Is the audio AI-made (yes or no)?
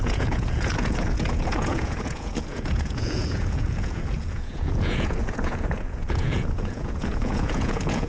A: yes